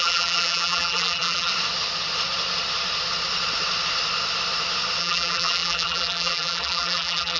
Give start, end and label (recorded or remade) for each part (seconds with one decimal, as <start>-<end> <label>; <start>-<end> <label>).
0.0-1.5 remade; 1.5-5.0 recorded; 5.0-7.4 remade